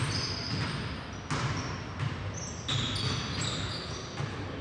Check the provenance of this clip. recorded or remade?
recorded